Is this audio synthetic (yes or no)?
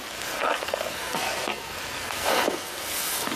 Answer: yes